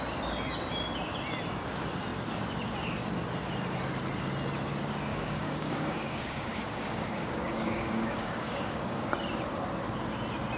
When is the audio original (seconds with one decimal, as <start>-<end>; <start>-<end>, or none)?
0.0-5.1; 9.1-10.6